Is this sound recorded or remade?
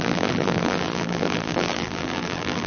remade